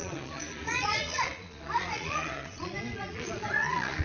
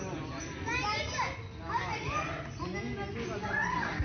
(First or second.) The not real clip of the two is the first